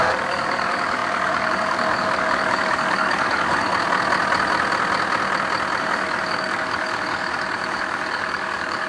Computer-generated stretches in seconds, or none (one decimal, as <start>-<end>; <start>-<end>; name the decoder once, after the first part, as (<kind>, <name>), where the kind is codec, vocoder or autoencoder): 0.0-3.7 (codec, DAC); 5.8-8.9